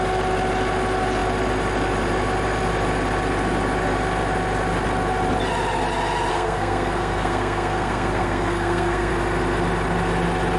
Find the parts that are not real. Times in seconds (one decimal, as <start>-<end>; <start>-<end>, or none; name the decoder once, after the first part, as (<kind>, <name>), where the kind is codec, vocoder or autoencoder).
6.3-9.1 (codec, SNAC)